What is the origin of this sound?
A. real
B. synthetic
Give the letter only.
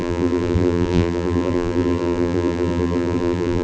B